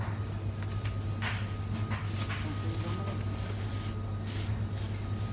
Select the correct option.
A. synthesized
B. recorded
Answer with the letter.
B